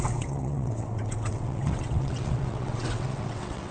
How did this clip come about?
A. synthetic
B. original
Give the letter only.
A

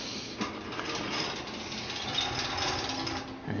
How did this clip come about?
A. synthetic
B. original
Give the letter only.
B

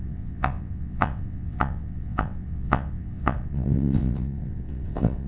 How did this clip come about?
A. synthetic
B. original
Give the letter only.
A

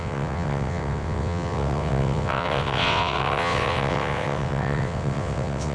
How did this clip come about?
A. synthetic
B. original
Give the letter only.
A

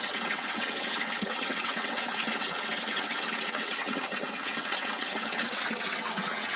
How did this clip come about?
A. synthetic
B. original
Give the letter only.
A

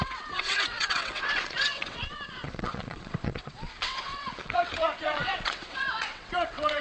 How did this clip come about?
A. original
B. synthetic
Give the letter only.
B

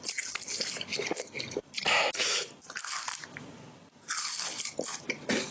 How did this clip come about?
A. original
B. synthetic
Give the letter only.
A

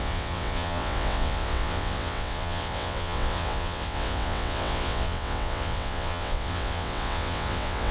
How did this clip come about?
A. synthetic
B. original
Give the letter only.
A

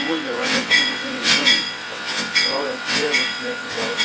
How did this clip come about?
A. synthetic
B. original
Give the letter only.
A